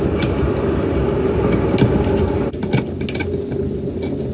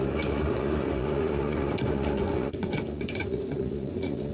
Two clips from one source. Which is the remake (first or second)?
second